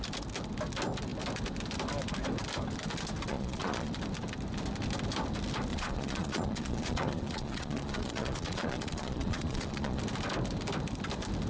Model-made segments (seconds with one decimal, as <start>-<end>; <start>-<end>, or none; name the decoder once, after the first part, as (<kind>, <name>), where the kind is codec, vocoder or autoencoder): 3.3-3.9 (vocoder, Vocos); 5.7-10.0